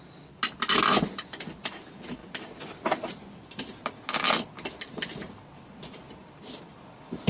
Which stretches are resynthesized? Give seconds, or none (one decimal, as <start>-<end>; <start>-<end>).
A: none